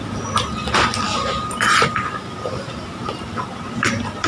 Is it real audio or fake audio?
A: real